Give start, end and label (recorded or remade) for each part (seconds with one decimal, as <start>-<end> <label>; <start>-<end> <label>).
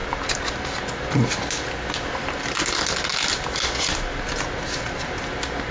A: 0.0-5.7 recorded